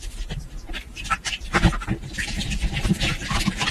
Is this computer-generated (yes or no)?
yes